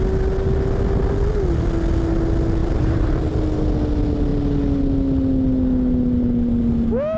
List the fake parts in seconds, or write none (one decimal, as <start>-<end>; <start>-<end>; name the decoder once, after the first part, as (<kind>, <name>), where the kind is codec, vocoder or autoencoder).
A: 2.6-3.2 (vocoder, BigVGAN v2)